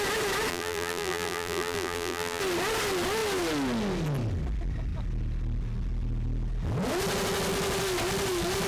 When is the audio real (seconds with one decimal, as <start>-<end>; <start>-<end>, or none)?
0.0-0.5; 2.4-8.7